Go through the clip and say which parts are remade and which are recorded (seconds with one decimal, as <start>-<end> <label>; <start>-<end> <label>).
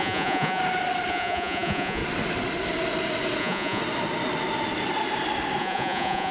0.0-0.6 remade; 0.6-1.1 recorded; 1.1-2.0 remade; 2.0-3.4 recorded; 3.4-3.8 remade; 3.8-5.6 recorded; 5.6-6.3 remade